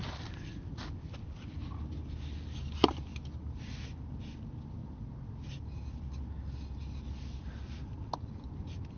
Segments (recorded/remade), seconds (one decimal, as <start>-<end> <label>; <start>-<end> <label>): 0.0-9.0 recorded